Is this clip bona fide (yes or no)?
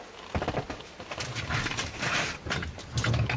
yes